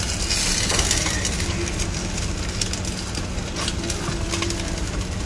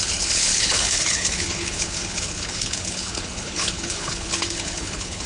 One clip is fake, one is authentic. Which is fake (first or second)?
second